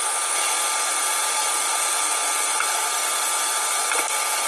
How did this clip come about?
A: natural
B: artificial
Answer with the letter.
A